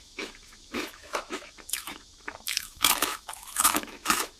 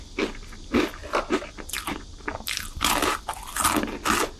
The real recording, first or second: second